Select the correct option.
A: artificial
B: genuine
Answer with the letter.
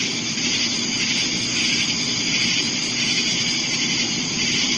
B